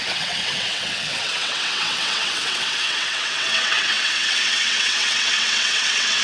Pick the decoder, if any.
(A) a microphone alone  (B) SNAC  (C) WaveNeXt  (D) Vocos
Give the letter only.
C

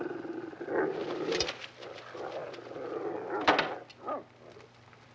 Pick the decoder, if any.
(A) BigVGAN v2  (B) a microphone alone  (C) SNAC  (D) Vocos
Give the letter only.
B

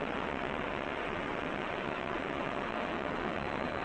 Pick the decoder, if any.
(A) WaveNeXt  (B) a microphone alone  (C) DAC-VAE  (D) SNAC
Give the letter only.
A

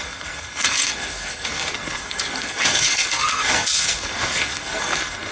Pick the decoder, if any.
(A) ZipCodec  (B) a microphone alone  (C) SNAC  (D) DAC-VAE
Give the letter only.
C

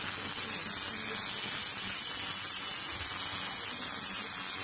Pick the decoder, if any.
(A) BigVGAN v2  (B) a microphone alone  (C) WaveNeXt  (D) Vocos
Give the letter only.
B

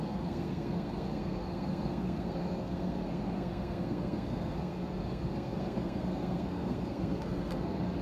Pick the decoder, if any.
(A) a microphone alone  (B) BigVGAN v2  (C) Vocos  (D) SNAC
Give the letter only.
D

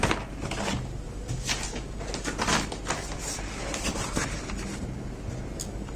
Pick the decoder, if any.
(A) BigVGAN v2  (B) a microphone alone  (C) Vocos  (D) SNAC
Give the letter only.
B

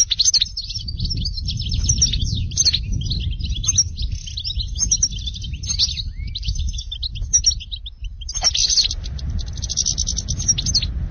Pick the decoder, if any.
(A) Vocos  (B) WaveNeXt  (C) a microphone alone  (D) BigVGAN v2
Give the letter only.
C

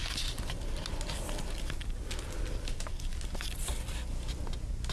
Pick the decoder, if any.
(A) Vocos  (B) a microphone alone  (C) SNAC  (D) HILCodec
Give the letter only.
B